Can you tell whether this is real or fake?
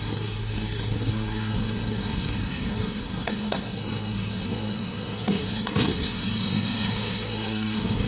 fake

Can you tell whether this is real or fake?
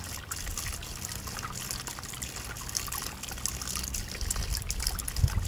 real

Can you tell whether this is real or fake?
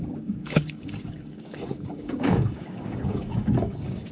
fake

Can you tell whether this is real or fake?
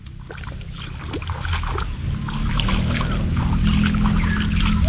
real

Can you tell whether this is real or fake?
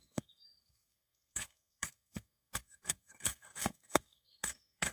fake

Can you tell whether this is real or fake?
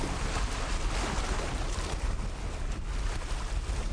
real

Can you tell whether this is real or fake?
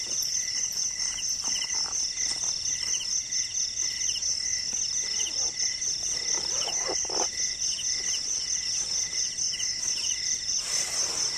real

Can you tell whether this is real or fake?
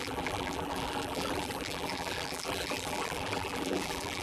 fake